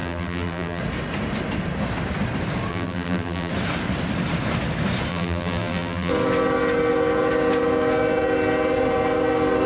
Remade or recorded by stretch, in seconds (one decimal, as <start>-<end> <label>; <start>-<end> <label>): 0.0-0.8 remade; 0.8-2.7 recorded; 2.7-3.5 remade; 3.5-5.1 recorded; 5.1-6.1 remade; 6.1-9.7 recorded